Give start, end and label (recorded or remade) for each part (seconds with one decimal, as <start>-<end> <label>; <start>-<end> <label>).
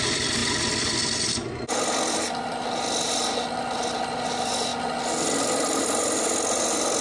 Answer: 0.0-7.0 recorded